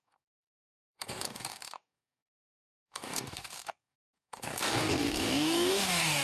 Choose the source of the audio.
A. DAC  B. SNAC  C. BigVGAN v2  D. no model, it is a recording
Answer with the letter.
A